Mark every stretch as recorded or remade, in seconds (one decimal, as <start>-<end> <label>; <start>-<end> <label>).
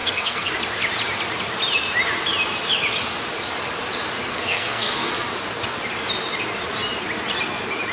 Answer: 0.0-0.5 remade; 0.5-4.3 recorded; 4.3-5.1 remade; 5.1-7.9 recorded